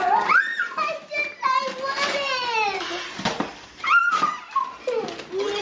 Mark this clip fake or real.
real